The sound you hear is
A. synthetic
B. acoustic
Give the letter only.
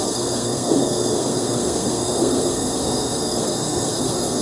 A